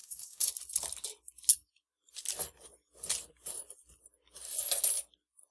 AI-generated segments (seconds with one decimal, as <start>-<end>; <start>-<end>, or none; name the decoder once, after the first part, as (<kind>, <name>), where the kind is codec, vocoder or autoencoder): 0.0-0.5 (codec, DAC)